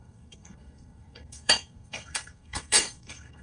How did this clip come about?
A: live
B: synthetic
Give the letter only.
B